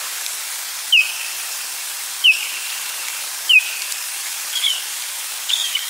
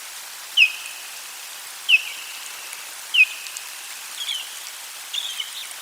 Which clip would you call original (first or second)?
second